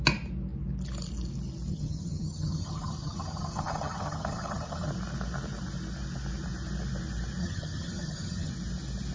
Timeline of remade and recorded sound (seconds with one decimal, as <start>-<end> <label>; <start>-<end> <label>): 0.0-1.7 recorded; 1.7-4.9 remade; 4.9-7.4 recorded; 7.4-8.5 remade; 8.5-9.1 recorded